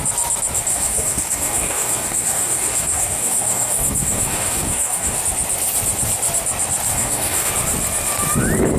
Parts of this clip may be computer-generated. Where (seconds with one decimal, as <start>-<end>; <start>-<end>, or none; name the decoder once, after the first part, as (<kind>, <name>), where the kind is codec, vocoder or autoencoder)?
0.7-5.2 (codec, DAC); 6.9-7.5